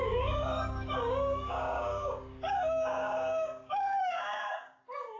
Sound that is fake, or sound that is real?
fake